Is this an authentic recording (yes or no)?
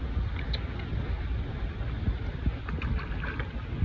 yes